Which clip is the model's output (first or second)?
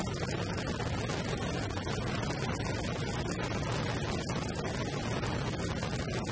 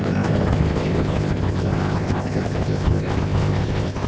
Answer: second